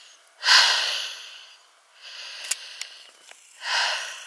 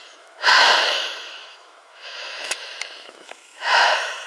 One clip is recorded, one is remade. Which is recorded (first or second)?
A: first